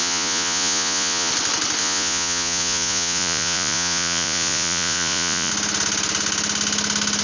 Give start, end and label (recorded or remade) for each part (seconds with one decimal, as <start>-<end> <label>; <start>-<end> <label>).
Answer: 0.0-1.3 remade; 1.3-1.8 recorded; 1.8-5.5 remade; 5.5-7.2 recorded

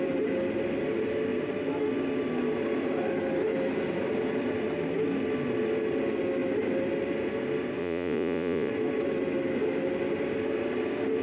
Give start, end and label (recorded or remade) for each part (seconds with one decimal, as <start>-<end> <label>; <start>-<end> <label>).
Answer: 0.0-7.8 recorded; 7.8-8.7 remade; 8.7-11.2 recorded

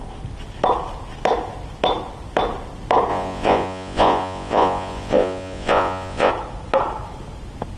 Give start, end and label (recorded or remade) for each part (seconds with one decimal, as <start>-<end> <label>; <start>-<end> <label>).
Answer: 0.0-3.1 recorded; 3.1-6.3 remade; 6.3-7.8 recorded

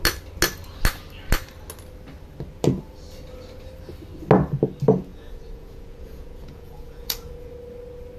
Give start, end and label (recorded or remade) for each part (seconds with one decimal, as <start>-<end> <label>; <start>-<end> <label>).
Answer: 0.0-5.1 recorded; 5.1-7.5 remade; 7.5-8.2 recorded

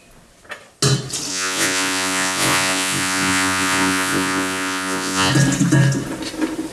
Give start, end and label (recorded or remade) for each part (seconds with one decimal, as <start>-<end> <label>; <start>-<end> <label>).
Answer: 0.0-1.3 recorded; 1.3-5.3 remade; 5.3-6.7 recorded

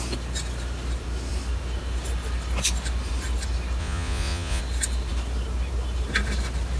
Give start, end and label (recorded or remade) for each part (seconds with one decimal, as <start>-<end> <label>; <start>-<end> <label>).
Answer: 0.0-3.8 recorded; 3.8-4.6 remade; 4.6-6.8 recorded